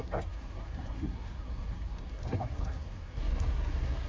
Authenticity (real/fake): fake